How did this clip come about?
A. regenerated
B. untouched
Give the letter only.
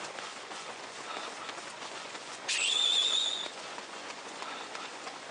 A